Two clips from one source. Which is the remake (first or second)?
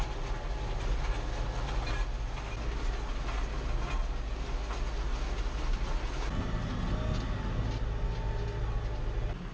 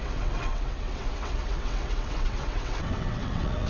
second